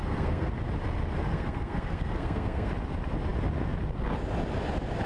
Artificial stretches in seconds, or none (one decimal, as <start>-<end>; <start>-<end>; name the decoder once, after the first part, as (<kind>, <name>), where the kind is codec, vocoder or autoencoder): 0.0-0.5 (codec, SNAC); 1.3-2.7